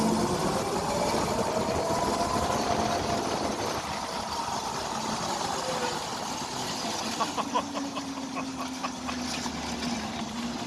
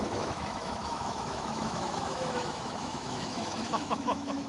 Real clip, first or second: first